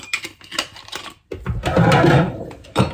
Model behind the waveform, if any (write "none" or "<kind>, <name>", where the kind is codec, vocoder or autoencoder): none